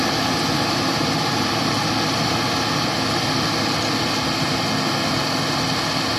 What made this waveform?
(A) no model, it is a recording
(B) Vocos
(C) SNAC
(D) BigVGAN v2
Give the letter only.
A